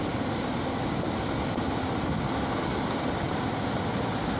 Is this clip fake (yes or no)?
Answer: no